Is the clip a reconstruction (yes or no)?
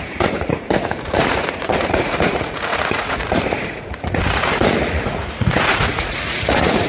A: yes